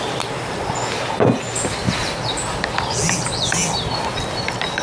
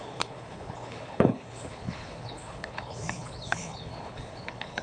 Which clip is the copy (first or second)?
second